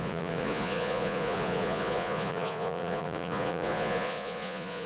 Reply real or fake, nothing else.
fake